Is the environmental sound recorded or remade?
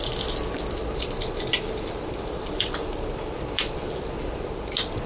recorded